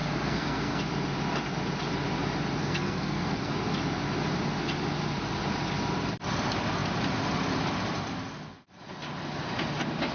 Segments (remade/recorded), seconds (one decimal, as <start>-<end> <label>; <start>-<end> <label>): 0.0-0.8 remade; 0.8-2.6 recorded; 2.6-3.5 remade; 3.5-10.1 recorded